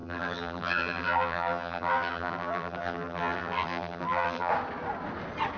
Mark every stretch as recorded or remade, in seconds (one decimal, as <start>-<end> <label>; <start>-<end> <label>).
0.0-4.5 remade; 4.5-5.6 recorded

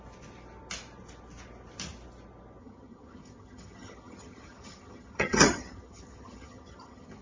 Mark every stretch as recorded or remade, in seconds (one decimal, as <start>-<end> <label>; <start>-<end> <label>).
0.0-2.6 recorded; 2.6-7.2 remade

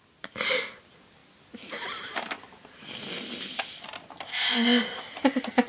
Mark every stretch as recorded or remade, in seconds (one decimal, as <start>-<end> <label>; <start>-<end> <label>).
0.0-4.3 recorded; 4.3-5.0 remade; 5.0-5.7 recorded